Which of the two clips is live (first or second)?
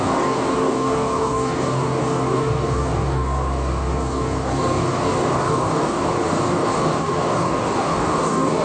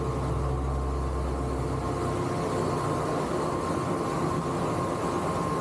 second